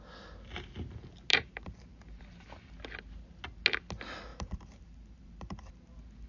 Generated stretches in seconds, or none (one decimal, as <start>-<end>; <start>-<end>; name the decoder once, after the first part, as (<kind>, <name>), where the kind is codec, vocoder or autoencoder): 1.3-2.2 (vocoder, BigVGAN v2); 4.3-5.7